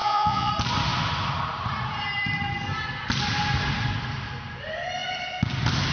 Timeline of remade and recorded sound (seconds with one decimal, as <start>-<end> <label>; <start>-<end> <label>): 0.0-0.5 remade; 0.5-5.9 recorded